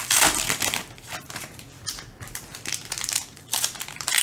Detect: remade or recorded remade